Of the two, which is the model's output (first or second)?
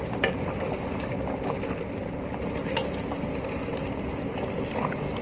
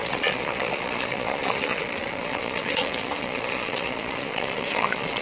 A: second